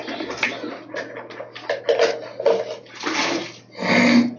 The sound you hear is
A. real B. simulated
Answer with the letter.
A